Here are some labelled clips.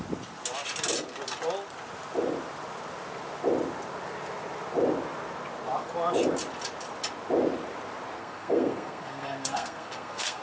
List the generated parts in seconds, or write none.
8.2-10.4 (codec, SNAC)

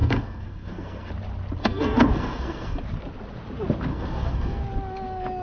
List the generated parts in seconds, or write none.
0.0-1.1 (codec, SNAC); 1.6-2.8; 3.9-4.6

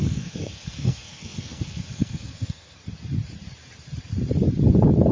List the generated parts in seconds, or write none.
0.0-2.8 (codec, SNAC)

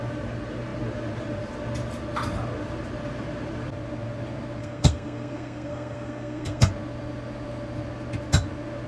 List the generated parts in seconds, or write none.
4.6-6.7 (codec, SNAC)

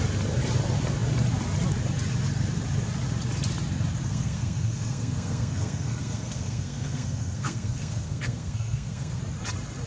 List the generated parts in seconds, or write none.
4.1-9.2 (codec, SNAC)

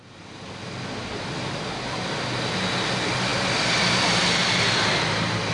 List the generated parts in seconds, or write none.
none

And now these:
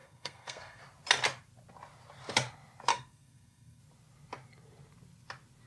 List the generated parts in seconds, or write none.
0.0-0.8 (codec, SNAC); 2.9-3.8

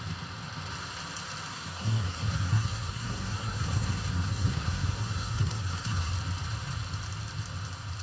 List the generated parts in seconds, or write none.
1.5-6.1 (codec, SNAC)